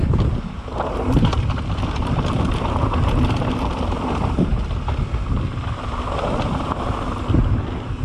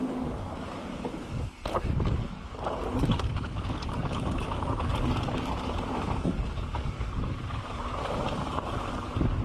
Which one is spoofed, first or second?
second